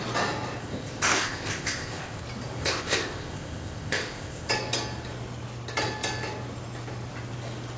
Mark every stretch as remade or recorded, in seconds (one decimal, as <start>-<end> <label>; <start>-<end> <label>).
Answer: 0.0-0.6 recorded; 0.6-2.2 remade; 2.2-2.6 recorded; 2.6-4.5 remade; 4.5-7.8 recorded